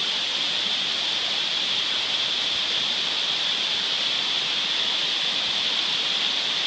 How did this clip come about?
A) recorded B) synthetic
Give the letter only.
A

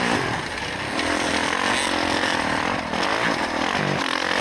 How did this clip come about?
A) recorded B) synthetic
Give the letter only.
A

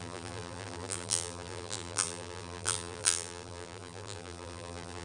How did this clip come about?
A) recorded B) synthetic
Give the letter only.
B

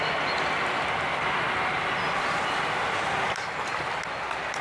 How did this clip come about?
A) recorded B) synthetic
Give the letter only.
A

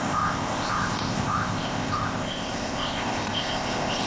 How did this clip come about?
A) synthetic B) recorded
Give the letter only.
A